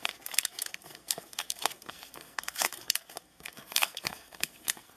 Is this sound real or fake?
fake